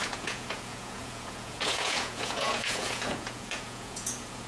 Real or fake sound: fake